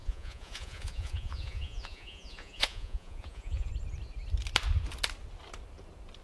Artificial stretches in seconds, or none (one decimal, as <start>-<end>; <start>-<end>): 0.0-3.7